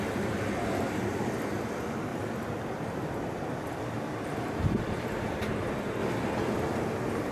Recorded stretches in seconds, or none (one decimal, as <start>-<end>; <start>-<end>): 0.0-2.1; 5.5-7.3